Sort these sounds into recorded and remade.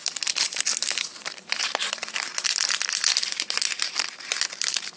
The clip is remade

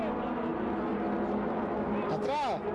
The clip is recorded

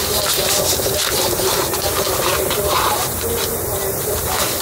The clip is recorded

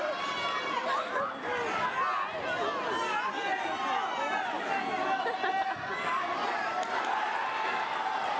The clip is recorded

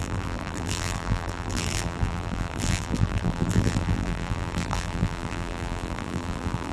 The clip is remade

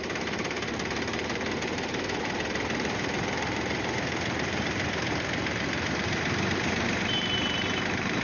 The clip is remade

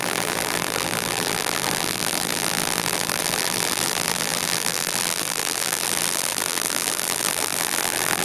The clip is remade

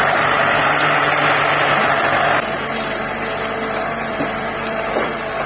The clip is remade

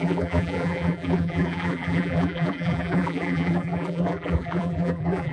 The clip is remade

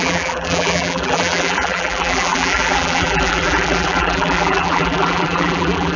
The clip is remade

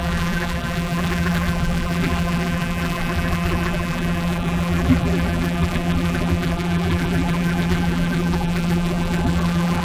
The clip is remade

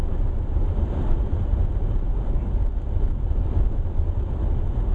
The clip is remade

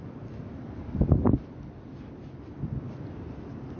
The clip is recorded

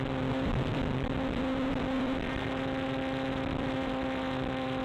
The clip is remade